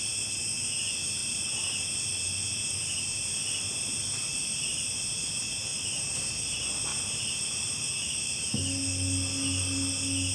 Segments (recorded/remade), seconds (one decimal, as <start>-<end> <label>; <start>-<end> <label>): 0.0-4.4 recorded; 4.4-5.0 remade; 5.0-5.7 recorded; 5.7-6.3 remade; 6.3-6.9 recorded; 6.9-8.5 remade; 8.5-10.3 recorded